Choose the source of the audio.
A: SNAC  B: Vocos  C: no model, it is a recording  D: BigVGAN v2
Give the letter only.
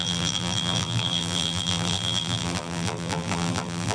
D